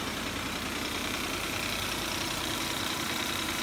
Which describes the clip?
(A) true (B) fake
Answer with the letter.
B